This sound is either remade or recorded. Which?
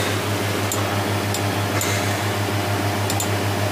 recorded